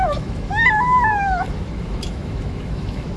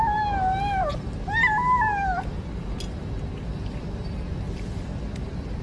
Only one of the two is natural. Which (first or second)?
second